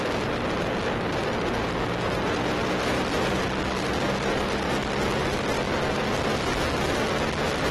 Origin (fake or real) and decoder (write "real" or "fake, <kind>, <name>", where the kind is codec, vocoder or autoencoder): real